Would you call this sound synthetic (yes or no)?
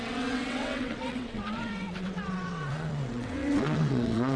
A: yes